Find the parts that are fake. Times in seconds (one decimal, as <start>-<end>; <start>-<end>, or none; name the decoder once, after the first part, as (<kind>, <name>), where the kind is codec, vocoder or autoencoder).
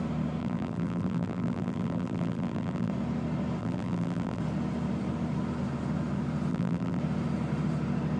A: 0.4-2.9 (vocoder, BigVGAN v2); 3.6-4.4; 6.5-7.0